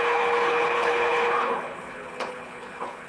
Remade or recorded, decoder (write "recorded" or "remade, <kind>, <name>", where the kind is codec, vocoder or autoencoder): remade, codec, HILCodec